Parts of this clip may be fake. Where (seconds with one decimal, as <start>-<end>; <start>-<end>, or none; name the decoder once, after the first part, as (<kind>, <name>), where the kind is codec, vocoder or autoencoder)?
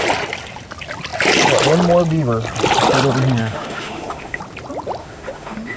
3.4-4.4 (autoencoder, DAC-VAE); 5.0-5.8